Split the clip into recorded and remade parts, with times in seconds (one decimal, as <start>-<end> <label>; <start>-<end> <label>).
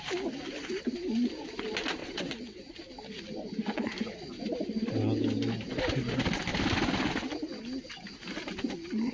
0.0-2.0 recorded; 2.0-2.7 remade; 2.7-9.1 recorded